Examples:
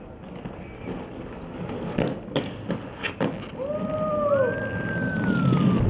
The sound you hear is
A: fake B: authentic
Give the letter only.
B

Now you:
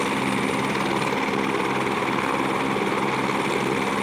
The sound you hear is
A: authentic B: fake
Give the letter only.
A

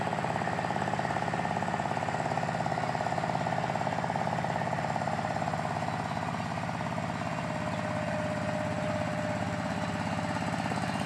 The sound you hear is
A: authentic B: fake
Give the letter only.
A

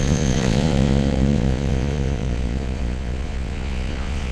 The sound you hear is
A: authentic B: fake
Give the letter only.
B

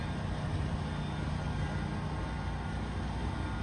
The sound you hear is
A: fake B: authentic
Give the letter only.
B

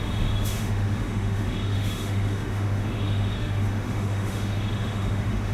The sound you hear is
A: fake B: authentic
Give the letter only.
A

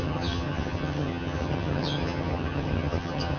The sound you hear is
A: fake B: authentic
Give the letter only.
A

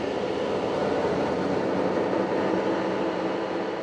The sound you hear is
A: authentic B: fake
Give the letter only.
B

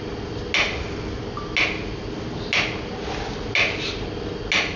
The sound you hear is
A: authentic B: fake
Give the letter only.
A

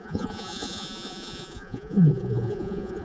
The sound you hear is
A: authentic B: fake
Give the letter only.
B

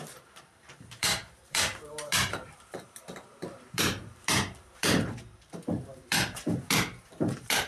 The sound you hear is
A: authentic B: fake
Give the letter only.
B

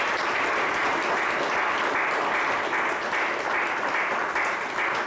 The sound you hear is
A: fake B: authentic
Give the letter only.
B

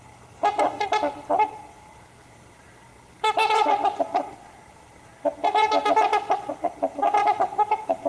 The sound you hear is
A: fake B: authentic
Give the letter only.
B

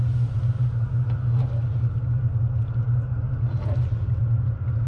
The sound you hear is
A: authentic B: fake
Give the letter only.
A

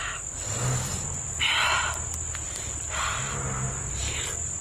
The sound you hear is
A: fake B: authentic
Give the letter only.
B